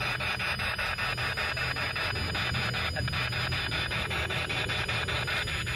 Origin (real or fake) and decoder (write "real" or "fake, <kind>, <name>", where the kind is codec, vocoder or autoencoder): real